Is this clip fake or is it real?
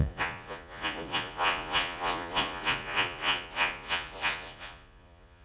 fake